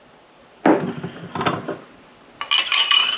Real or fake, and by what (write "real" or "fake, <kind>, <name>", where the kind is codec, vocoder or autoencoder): real